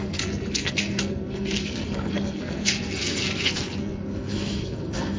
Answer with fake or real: fake